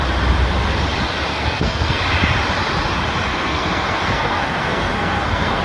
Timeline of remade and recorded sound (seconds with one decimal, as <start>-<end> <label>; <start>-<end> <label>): 0.0-1.3 recorded; 1.3-2.0 remade; 2.0-3.3 recorded; 3.3-5.6 remade